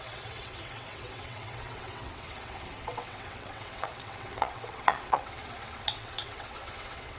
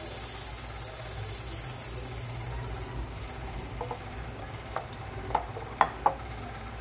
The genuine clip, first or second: second